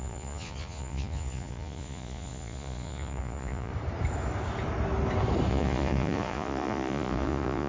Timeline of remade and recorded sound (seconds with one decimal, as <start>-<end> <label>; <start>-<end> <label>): 0.0-3.7 remade; 3.7-5.5 recorded; 5.5-7.7 remade